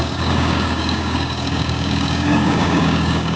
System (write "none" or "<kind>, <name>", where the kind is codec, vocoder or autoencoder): codec, DAC